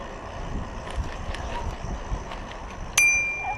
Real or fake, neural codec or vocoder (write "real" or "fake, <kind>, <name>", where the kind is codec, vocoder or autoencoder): real